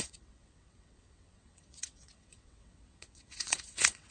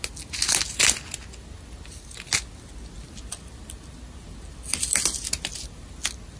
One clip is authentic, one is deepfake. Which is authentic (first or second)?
second